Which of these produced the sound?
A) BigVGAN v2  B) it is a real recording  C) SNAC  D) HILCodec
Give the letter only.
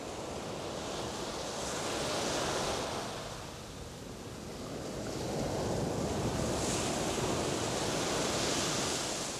B